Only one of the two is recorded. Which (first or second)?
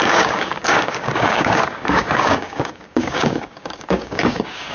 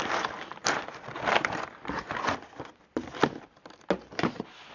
second